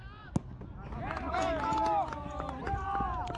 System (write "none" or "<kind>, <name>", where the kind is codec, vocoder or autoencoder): none